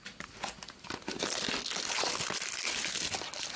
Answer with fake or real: real